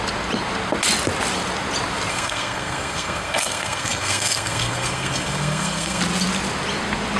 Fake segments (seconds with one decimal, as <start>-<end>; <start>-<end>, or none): 2.1-6.0